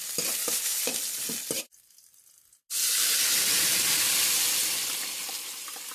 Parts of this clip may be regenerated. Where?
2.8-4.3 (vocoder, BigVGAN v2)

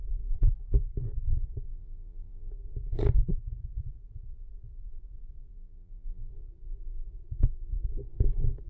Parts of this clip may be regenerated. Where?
1.7-2.5 (vocoder, BigVGAN v2); 5.5-6.3

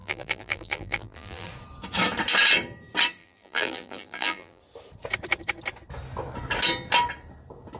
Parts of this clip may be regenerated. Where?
0.0-1.5 (vocoder, BigVGAN v2); 3.2-4.6